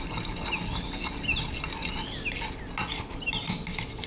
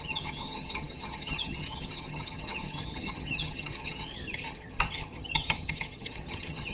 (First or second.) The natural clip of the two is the first